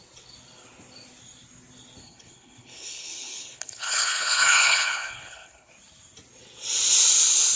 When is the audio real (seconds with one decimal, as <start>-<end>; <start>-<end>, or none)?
0.0-2.0; 5.7-7.6